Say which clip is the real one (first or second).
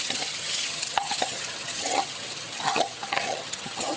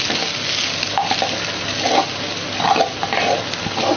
second